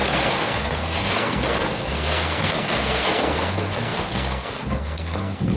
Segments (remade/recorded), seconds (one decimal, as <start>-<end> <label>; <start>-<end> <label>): 0.0-5.6 remade